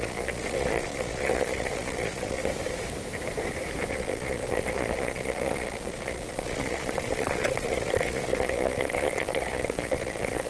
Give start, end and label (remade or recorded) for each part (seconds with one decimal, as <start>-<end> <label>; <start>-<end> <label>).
0.0-2.4 remade; 2.4-3.9 recorded; 3.9-10.5 remade